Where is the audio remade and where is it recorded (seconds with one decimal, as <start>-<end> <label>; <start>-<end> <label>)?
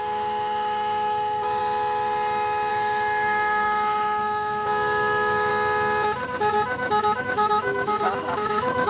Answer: 0.0-1.6 remade; 1.6-2.7 recorded; 2.7-5.5 remade; 5.5-7.2 recorded; 7.2-8.9 remade